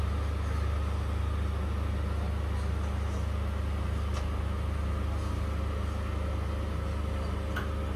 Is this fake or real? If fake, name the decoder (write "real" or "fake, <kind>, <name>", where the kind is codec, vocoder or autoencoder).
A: real